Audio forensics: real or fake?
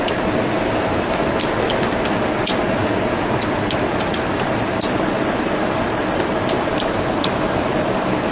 real